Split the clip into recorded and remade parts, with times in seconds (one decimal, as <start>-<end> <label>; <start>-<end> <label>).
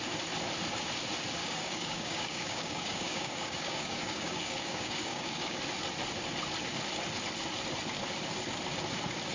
0.0-1.4 recorded; 1.4-5.6 remade; 5.6-9.3 recorded